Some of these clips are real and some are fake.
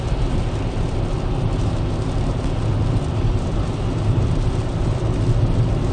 real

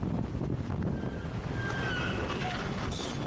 real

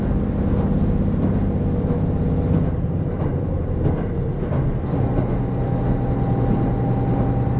real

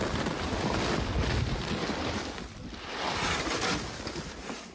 real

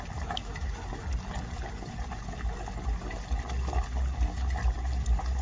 real